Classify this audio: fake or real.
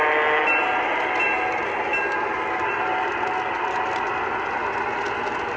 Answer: real